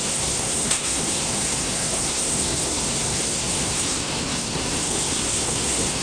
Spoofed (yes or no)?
yes